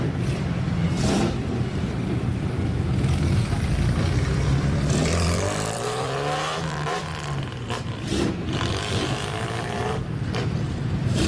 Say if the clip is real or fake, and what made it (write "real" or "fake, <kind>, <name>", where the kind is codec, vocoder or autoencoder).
fake, vocoder, BigVGAN v2